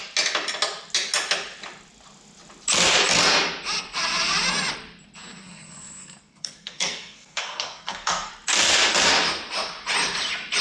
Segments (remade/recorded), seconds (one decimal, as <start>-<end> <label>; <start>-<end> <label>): 0.0-5.4 recorded; 5.4-8.3 remade; 8.3-10.6 recorded

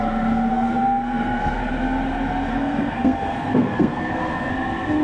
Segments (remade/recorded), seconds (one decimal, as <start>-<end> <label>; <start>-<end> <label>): 0.0-0.5 recorded; 0.5-1.6 remade; 1.6-2.5 recorded; 2.5-4.5 remade; 4.5-5.0 recorded

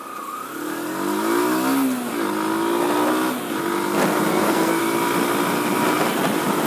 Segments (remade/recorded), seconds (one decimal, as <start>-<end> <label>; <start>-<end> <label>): 0.0-4.3 recorded; 4.3-4.8 remade; 4.8-6.7 recorded

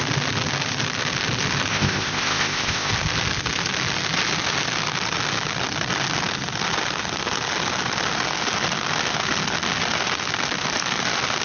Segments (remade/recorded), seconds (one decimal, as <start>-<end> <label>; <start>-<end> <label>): 0.0-1.7 recorded; 1.7-2.9 remade; 2.9-11.4 recorded

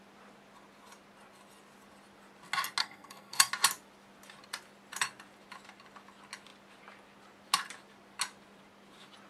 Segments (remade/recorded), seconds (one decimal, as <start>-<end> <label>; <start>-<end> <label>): 0.0-2.8 recorded; 2.8-3.5 remade; 3.5-9.3 recorded

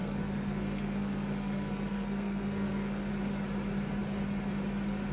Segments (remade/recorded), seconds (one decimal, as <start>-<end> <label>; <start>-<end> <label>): 0.0-3.1 remade; 3.1-5.1 recorded

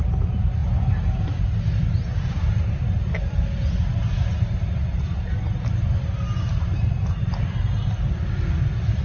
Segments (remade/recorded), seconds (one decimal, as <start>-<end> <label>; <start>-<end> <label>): 0.0-9.0 recorded

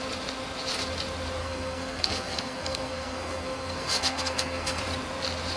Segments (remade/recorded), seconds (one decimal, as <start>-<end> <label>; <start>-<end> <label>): 0.0-1.4 recorded; 1.4-4.8 remade; 4.8-5.6 recorded